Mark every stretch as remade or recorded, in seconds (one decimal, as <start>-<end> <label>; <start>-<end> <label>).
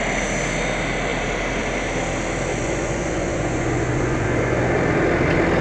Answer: 0.0-2.5 recorded; 2.5-4.7 remade; 4.7-5.6 recorded